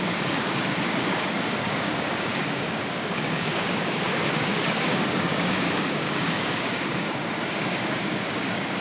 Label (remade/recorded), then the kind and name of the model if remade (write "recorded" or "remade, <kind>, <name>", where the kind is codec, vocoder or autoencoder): remade, codec, DAC